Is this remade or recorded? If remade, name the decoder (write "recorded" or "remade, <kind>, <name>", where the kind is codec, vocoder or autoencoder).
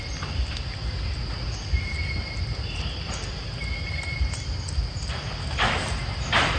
recorded